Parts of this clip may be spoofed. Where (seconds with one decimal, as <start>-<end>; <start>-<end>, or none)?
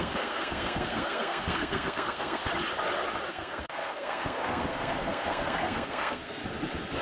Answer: 0.0-2.4; 3.3-6.4